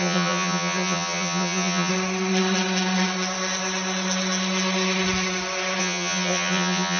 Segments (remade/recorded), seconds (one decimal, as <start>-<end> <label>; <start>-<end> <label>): 0.0-1.9 remade; 1.9-5.8 recorded; 5.8-7.0 remade